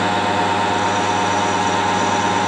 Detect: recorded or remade recorded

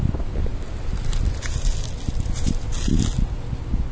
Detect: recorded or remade recorded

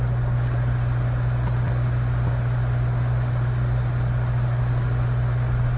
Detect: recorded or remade recorded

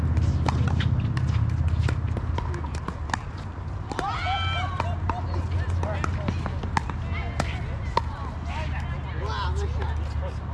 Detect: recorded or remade recorded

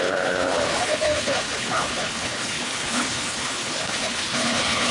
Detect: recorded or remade remade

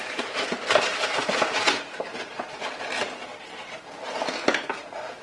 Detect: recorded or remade recorded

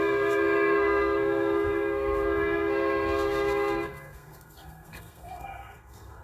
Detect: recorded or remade remade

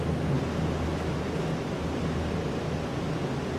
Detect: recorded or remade recorded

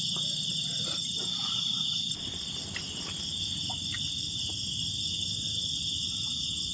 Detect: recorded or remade recorded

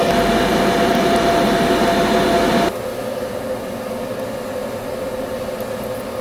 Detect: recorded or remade recorded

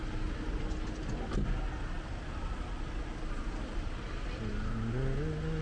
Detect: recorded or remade recorded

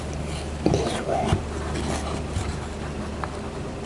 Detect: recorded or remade recorded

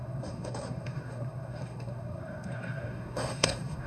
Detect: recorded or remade remade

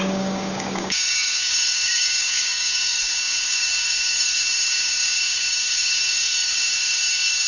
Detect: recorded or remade remade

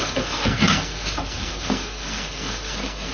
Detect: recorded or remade remade